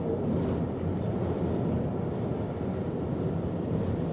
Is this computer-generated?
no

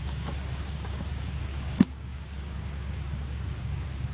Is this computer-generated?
yes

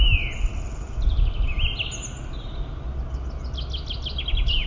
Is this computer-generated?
no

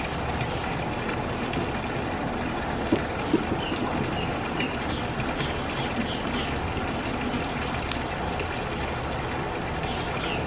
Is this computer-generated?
no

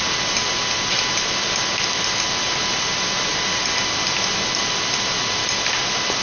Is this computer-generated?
no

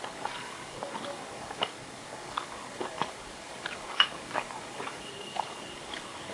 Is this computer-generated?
yes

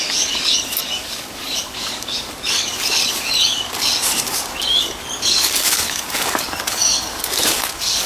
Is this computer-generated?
yes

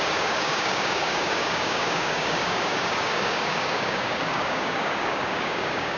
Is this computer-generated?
yes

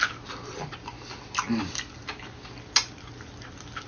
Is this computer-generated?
no